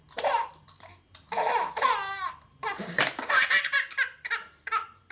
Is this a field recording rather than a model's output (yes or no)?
no